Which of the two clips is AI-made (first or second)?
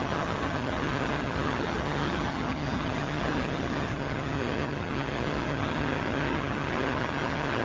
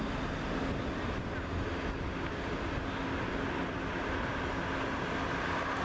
first